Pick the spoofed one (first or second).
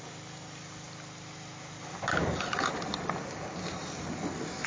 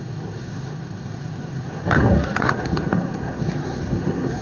second